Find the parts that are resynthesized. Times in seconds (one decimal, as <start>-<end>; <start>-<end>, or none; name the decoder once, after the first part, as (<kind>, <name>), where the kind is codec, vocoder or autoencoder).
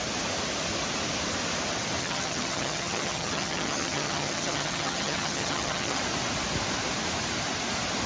2.0-6.0 (vocoder, HiFi-GAN)